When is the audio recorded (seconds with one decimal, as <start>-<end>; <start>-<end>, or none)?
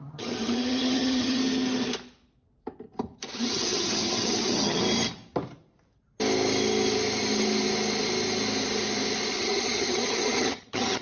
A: 1.4-3.5; 4.8-9.4